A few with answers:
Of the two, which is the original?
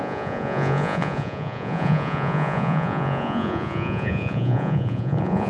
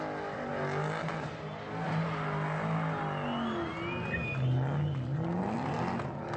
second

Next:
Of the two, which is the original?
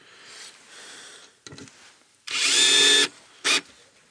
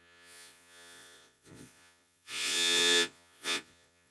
first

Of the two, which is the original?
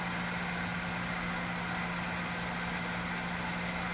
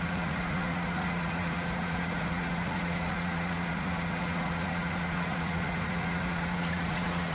first